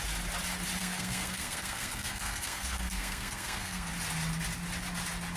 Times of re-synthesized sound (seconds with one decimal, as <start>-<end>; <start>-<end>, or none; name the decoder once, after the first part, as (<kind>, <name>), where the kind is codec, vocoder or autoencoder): 0.8-3.9 (codec, SNAC)